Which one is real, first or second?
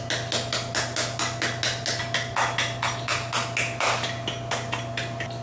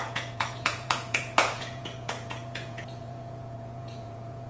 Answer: first